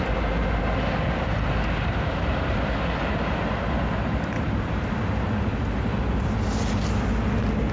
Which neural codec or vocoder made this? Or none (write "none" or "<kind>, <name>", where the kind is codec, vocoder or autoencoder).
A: none